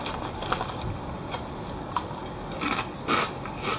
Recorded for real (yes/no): yes